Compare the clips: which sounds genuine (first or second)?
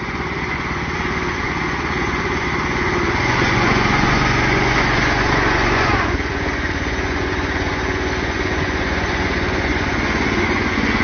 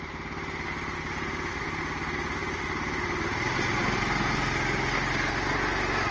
second